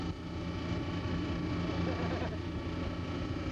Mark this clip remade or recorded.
recorded